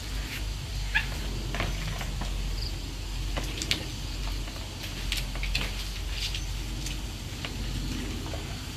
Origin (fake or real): real